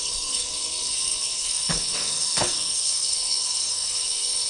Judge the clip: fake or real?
fake